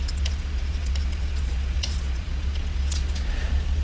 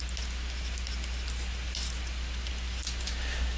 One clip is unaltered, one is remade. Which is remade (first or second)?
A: first